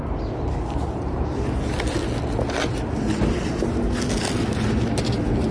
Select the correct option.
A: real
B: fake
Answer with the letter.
A